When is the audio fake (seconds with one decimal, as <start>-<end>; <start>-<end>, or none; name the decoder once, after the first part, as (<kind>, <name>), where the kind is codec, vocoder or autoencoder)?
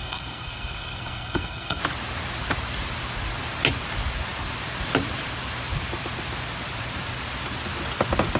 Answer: 0.0-1.8 (codec, SNAC)